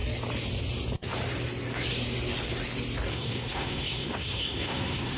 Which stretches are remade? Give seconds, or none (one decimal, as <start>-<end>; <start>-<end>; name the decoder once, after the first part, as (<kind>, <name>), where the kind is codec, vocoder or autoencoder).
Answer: 3.1-5.2 (codec, SNAC)